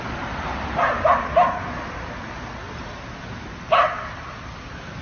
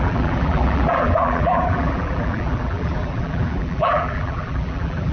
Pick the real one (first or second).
first